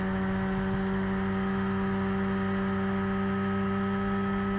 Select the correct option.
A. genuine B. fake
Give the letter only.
A